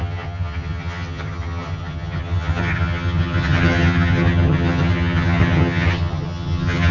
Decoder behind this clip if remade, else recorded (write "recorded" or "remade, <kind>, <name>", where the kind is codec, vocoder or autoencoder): remade, vocoder, HiFi-GAN